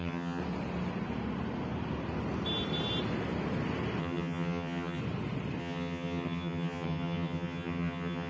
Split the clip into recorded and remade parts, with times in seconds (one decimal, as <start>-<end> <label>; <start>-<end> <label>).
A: 0.0-0.4 remade; 0.4-4.0 recorded; 4.0-5.0 remade; 5.0-5.6 recorded; 5.6-8.3 remade